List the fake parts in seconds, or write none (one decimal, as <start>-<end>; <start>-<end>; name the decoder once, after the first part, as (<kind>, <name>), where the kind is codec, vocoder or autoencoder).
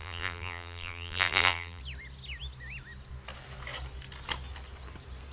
0.0-1.8 (vocoder, BigVGAN v2)